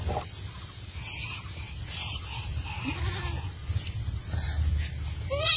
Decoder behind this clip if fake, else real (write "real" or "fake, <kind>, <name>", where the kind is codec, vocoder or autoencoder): real